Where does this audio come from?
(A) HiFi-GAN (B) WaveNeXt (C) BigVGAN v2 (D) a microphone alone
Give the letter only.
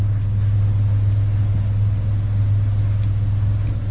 D